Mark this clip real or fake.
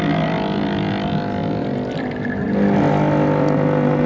real